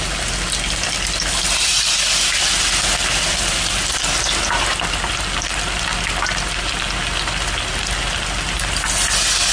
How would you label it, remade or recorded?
recorded